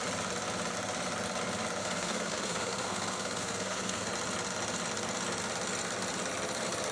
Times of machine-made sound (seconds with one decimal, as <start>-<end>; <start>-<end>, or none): 1.8-4.1